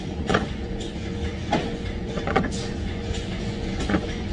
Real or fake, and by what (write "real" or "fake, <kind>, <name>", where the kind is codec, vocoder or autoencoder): fake, vocoder, Vocos